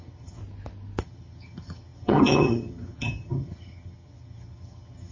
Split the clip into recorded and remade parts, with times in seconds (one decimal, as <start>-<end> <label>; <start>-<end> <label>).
0.0-0.4 remade; 0.4-1.0 recorded; 1.0-5.1 remade